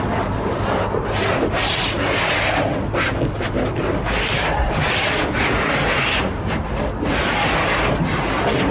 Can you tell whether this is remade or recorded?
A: recorded